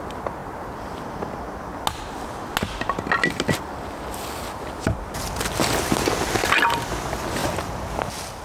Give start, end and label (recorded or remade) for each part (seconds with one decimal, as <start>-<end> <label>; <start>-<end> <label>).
0.0-7.4 recorded; 7.4-8.4 remade